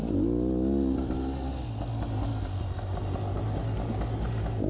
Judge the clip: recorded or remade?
recorded